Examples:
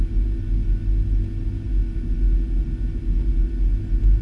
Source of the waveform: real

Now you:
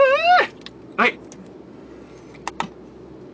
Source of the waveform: real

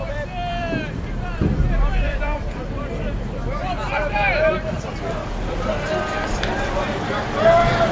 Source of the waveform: fake